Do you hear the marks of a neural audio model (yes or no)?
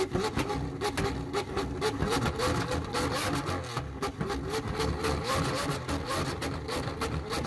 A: no